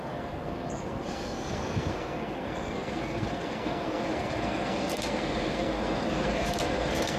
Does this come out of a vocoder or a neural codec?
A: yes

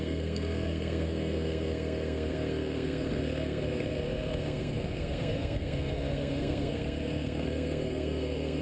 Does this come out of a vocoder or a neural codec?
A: yes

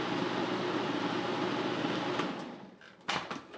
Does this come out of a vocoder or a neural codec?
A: no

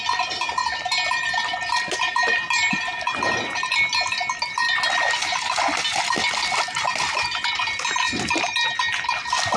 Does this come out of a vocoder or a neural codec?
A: no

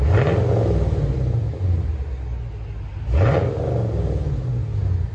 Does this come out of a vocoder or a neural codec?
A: no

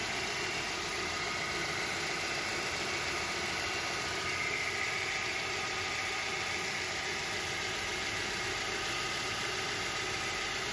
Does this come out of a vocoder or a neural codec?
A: no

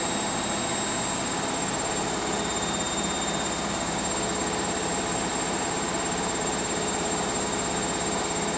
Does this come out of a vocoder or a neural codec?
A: no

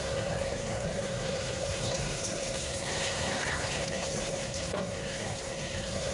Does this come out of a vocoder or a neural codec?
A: yes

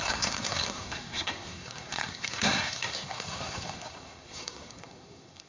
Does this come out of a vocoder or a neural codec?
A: yes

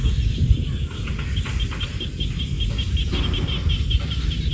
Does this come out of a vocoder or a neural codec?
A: no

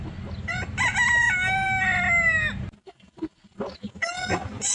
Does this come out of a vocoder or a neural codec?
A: no